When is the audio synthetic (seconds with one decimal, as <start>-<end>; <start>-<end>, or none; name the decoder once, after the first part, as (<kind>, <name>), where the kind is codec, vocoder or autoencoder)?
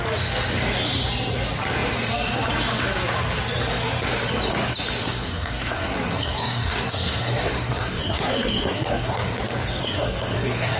5.0-9.4 (codec, SNAC); 9.8-10.8